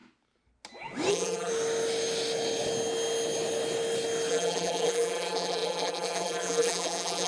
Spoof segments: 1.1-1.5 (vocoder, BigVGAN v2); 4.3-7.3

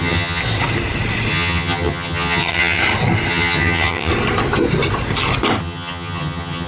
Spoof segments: 0.0-0.4 (vocoder, HiFi-GAN); 1.3-2.8; 3.3-4.1; 5.6-6.7

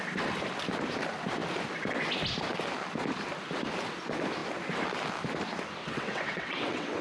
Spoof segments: 5.8-7.0 (vocoder, WaveNeXt)

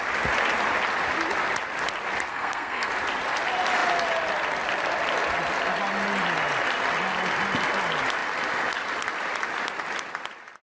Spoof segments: 2.3-2.9 (codec, SNAC)

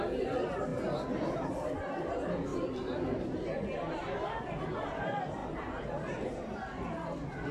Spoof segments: none

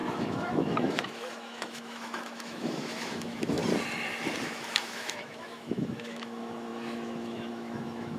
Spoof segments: 0.0-3.6 (autoencoder, DAC-VAE); 4.4-8.2